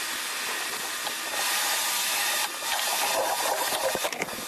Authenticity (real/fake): real